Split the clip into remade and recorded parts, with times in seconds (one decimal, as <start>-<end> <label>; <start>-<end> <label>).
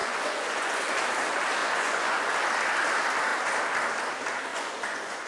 0.0-1.0 remade; 1.0-1.6 recorded; 1.6-2.3 remade; 2.3-4.5 recorded; 4.5-5.3 remade